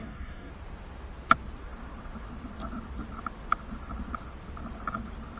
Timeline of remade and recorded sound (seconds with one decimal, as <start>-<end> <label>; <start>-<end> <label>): 0.0-0.5 remade; 0.5-5.4 recorded